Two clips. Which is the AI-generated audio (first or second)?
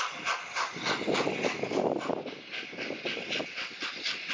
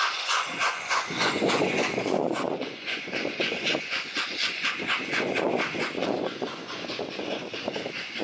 second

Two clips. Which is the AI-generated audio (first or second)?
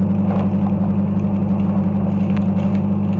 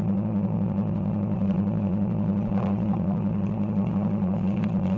second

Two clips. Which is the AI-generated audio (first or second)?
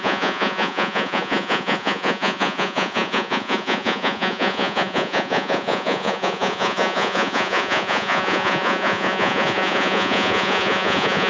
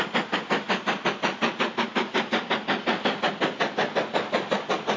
first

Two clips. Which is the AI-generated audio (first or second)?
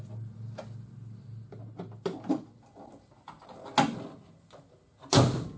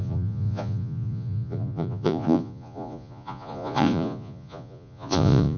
second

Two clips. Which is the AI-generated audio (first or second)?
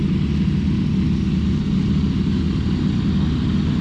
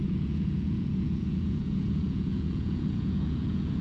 second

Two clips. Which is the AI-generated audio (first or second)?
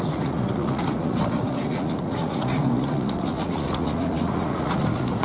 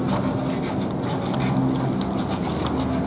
first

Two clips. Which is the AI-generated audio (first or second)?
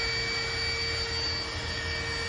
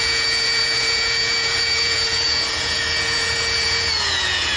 second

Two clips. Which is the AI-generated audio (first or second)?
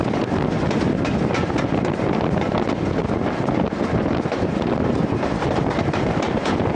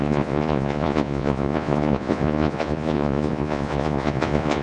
second